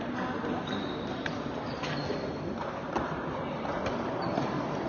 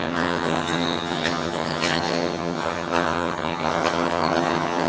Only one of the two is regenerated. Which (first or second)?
second